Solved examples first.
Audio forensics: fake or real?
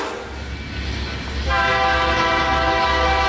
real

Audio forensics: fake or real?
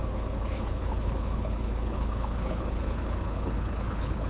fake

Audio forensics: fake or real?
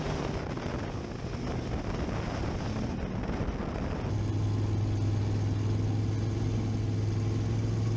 real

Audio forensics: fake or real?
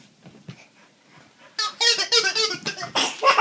real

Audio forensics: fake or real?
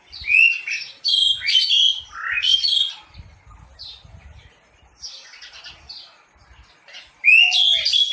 real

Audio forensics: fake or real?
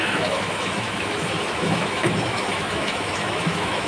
fake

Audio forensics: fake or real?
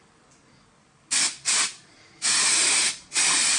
real